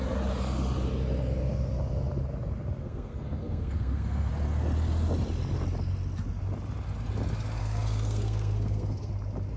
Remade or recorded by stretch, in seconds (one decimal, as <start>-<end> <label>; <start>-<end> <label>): 0.0-2.8 recorded; 2.8-4.3 remade; 4.3-7.6 recorded; 7.6-9.1 remade; 9.1-9.6 recorded